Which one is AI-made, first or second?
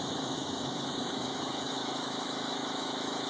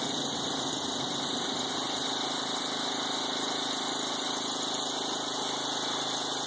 first